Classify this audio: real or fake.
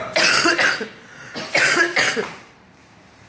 real